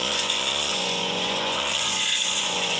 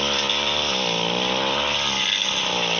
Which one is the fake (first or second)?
first